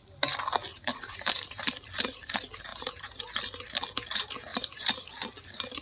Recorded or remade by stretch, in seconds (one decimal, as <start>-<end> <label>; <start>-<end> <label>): 0.0-0.7 recorded; 0.7-1.7 remade; 1.7-2.7 recorded; 2.7-3.2 remade; 3.2-4.5 recorded; 4.5-5.1 remade; 5.1-5.8 recorded